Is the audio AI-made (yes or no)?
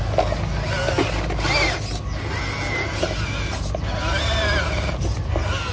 no